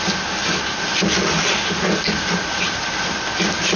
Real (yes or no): yes